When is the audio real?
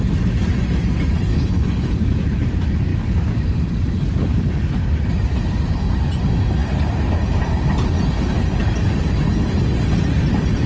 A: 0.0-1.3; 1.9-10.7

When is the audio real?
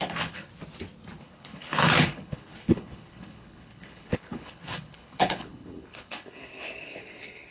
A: 0.5-1.2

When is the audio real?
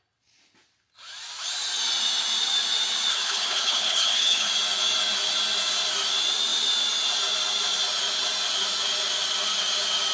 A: 0.0-3.1; 4.5-10.1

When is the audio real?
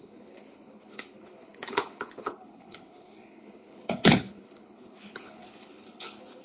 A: none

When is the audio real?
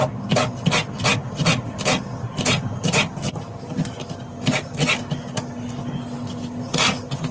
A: 0.0-7.3